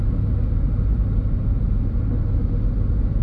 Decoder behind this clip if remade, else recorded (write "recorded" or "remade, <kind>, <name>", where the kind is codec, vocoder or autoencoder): recorded